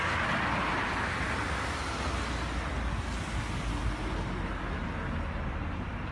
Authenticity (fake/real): real